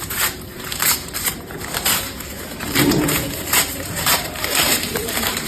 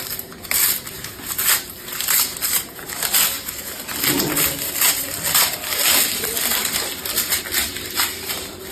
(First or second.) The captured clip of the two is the second